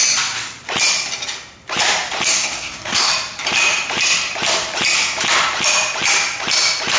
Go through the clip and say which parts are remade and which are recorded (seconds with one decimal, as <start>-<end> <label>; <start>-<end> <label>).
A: 0.0-2.3 recorded; 2.3-3.1 remade; 3.1-7.0 recorded